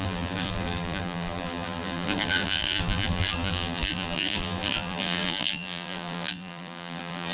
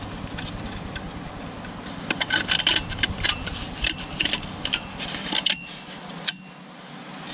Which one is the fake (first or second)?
first